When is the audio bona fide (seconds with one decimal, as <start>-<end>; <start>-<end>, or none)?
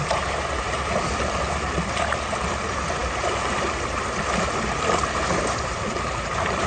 none